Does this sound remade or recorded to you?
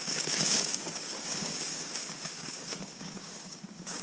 remade